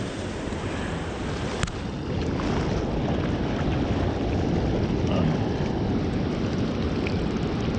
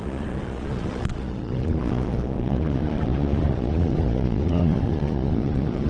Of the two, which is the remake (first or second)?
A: second